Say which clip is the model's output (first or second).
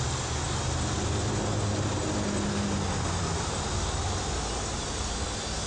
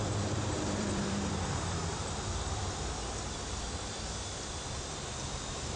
second